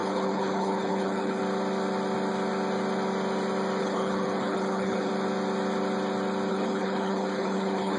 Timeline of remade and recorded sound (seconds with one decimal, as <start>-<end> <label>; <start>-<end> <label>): 0.0-1.4 remade; 1.4-3.8 recorded; 3.8-5.1 remade; 5.1-6.5 recorded; 6.5-8.0 remade

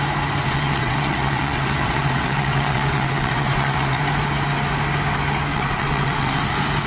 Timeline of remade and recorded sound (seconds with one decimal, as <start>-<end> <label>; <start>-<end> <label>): 0.0-0.4 recorded; 0.4-4.0 remade; 4.0-5.5 recorded; 5.5-6.4 remade; 6.4-6.9 recorded